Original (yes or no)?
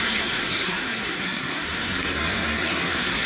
no